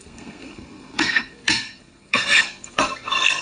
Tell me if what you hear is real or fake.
fake